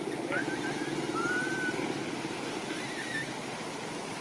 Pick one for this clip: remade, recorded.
recorded